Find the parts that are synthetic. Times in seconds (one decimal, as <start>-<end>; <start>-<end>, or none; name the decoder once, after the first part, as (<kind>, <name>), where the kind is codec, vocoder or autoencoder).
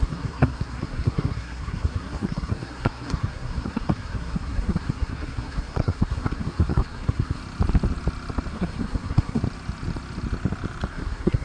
0.0-7.4 (codec, SNAC); 8.5-9.4; 10.9-11.4